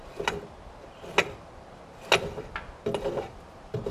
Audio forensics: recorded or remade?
recorded